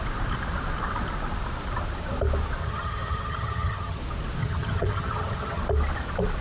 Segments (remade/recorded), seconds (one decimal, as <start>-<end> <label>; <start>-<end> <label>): 0.0-2.6 recorded; 2.6-4.0 remade; 4.0-4.4 recorded; 4.4-5.6 remade; 5.6-6.4 recorded